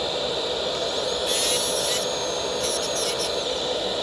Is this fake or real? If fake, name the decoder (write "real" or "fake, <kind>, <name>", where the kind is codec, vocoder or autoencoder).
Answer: real